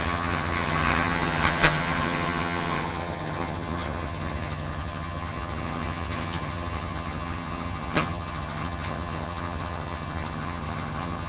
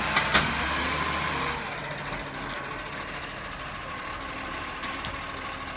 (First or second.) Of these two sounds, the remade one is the first